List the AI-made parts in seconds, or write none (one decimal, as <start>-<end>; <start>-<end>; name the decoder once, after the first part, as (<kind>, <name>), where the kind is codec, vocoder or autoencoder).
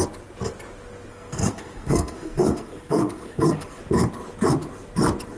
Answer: 1.1-3.8 (codec, SNAC)